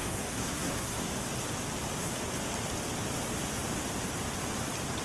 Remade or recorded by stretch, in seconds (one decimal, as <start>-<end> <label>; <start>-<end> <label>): 0.0-1.1 remade; 1.1-5.0 recorded